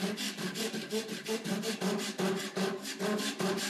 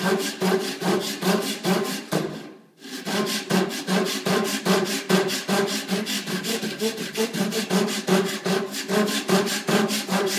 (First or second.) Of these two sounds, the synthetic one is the second